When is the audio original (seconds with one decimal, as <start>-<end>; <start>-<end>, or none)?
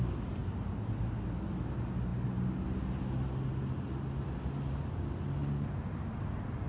0.0-6.7